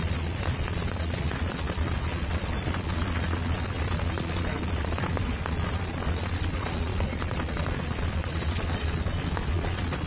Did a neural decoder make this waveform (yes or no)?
yes